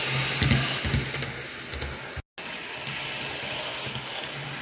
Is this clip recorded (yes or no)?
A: yes